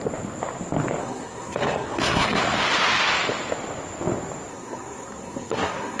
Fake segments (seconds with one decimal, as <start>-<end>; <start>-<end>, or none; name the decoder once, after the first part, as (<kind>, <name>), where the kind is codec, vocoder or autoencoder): 1.0-2.4 (codec, SNAC); 4.5-6.0